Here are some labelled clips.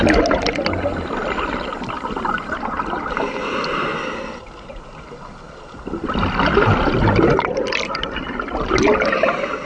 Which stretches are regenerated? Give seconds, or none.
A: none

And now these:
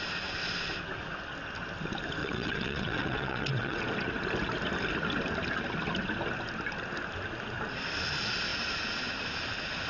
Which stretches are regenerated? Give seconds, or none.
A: 2.2-3.8 (vocoder, WaveNeXt)

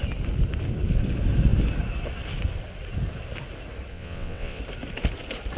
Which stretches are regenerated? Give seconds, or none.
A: 3.9-4.6 (vocoder, WaveNeXt)

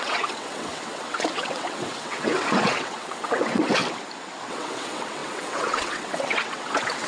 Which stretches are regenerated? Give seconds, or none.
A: 0.0-3.8 (vocoder, WaveNeXt); 4.5-7.1

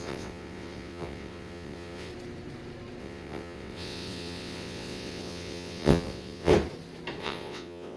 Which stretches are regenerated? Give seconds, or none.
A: 0.0-2.1 (vocoder, WaveNeXt); 3.0-6.5; 7.2-8.0

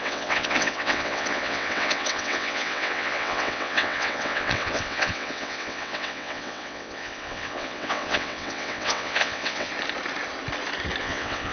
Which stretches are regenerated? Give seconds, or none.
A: 0.0-9.7 (vocoder, WaveNeXt); 11.0-11.5